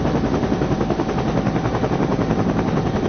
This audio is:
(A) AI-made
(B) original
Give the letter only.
B